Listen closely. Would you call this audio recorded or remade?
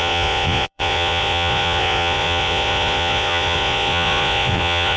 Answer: remade